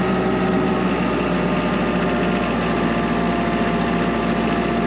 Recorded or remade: recorded